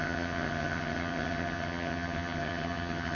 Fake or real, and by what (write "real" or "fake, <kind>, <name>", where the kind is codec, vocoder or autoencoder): fake, vocoder, HiFi-GAN